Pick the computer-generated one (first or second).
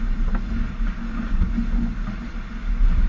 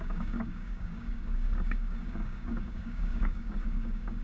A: second